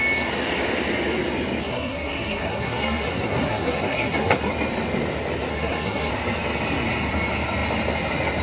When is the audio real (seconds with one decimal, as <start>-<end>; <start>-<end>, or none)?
0.0-1.6; 4.5-5.5; 6.1-8.4